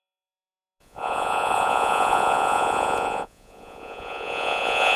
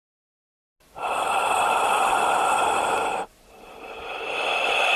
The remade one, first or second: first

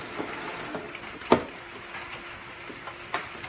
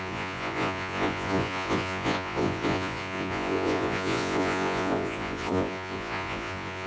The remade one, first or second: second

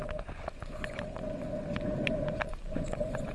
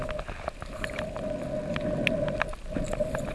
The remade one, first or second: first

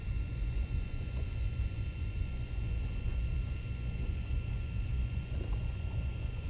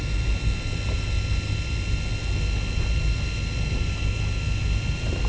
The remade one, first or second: first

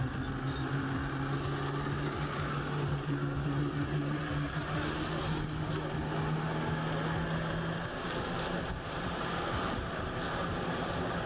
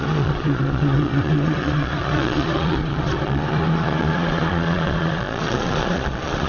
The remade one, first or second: second